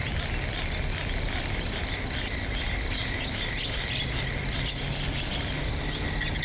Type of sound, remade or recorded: recorded